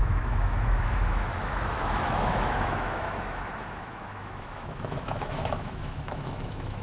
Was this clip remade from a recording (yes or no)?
yes